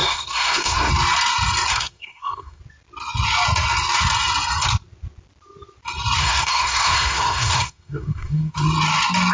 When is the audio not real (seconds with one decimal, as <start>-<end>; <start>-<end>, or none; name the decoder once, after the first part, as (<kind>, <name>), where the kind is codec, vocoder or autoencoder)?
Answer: 0.0-0.9 (codec, SNAC); 1.7-2.6; 6.2-8.5